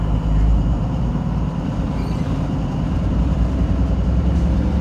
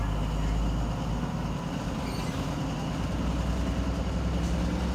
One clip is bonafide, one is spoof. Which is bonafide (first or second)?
second